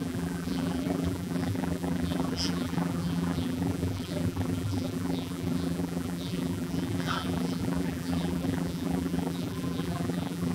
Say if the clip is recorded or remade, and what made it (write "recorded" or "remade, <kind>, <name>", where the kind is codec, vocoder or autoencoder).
remade, vocoder, BigVGAN v2